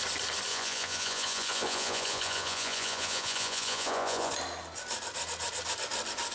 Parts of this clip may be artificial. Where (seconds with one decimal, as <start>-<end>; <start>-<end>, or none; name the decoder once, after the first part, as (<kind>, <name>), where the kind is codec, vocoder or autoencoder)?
0.5-4.3 (vocoder, Vocos)